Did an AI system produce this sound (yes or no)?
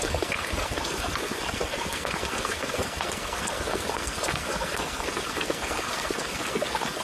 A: yes